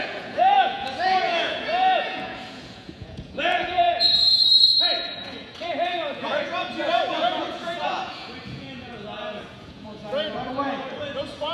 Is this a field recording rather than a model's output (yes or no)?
no